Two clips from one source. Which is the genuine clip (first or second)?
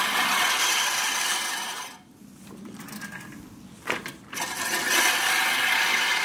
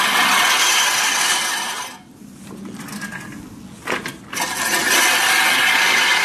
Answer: second